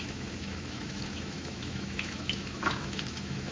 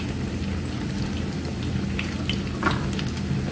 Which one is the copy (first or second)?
first